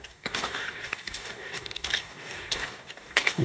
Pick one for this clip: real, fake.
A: fake